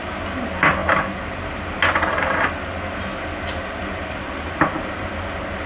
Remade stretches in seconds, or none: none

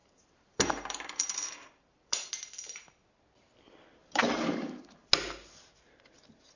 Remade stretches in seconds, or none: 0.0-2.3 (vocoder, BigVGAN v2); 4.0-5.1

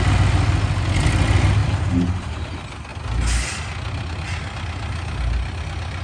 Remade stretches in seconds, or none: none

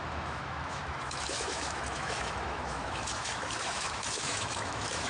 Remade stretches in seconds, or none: 0.0-5.1 (autoencoder, DAC-VAE)

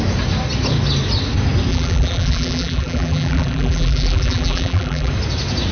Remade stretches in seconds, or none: 1.7-5.1 (vocoder, BigVGAN v2)

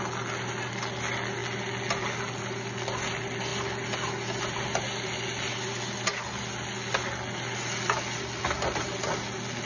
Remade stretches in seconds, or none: none